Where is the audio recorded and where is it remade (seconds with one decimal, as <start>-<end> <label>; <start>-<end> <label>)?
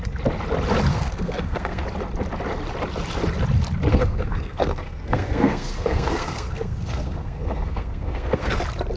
0.0-0.9 recorded; 0.9-1.8 remade; 1.8-3.9 recorded; 3.9-8.6 remade; 8.6-9.0 recorded